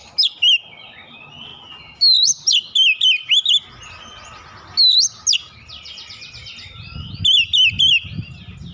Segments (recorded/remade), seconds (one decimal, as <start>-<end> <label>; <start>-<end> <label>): 0.0-8.7 recorded